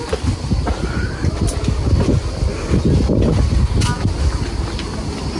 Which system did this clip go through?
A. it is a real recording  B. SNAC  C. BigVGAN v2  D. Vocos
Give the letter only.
A